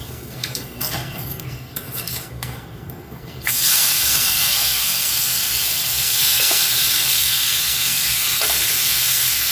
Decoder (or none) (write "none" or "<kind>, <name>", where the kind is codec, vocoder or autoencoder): codec, SNAC